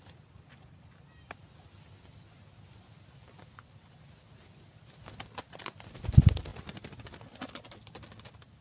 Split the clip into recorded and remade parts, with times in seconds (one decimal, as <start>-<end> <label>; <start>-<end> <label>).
0.0-8.6 recorded